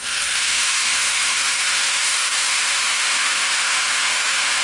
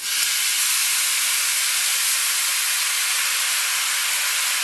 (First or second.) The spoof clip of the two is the first